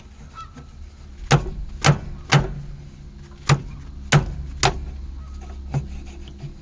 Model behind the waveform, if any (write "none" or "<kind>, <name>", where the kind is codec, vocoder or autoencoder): none